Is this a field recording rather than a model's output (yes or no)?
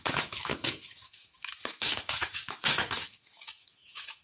no